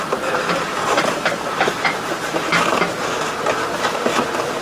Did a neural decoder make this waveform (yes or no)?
yes